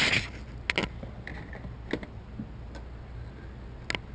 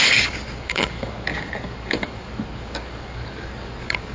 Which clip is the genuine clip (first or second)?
first